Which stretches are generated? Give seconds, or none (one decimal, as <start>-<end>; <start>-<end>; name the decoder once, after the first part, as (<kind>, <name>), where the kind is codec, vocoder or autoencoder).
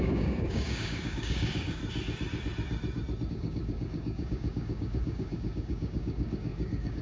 0.0-1.8 (codec, DAC); 3.3-7.0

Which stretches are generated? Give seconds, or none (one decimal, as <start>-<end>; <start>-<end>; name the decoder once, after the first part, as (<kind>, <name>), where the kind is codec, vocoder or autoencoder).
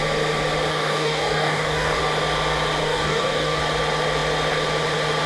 0.7-2.0 (codec, DAC); 2.8-3.6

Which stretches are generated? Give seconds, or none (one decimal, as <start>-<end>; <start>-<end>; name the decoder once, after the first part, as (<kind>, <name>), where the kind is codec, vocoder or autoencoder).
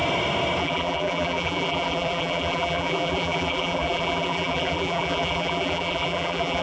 0.6-6.6 (vocoder, BigVGAN v2)